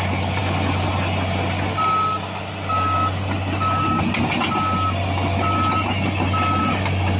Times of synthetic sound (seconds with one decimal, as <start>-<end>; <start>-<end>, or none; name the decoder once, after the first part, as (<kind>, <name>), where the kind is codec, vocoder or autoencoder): 6.6-7.2 (codec, DAC)